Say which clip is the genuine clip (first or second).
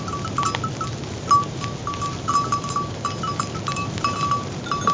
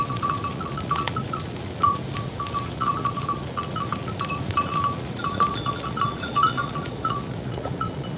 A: first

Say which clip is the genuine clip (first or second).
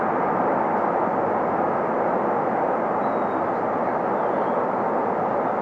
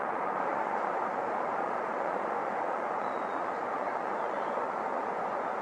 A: first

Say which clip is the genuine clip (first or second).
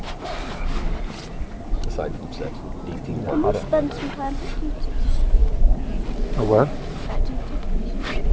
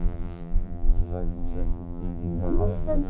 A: first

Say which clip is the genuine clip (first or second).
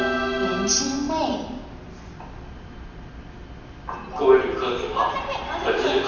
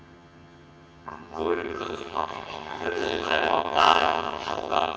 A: first